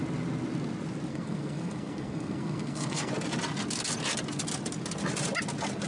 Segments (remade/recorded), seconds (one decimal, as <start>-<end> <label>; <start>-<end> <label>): 0.0-1.1 recorded; 1.1-3.1 remade; 3.1-5.9 recorded